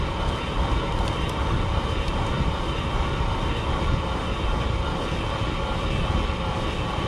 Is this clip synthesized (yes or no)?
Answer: yes